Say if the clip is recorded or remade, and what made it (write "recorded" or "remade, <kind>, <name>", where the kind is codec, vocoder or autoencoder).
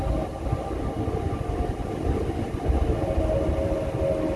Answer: recorded